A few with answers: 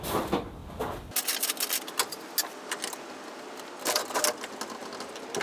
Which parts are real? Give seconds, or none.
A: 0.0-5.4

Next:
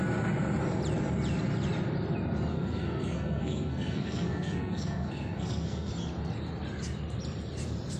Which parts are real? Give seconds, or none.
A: 0.0-2.5; 5.9-8.0

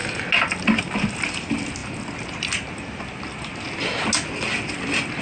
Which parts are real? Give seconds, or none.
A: 0.0-5.2

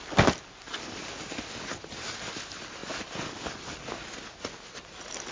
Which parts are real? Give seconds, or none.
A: 0.0-5.3